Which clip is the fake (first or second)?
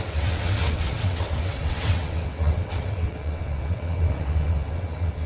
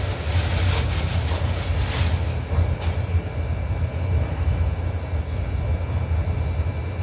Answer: first